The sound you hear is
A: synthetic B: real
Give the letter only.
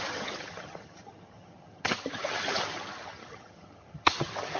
A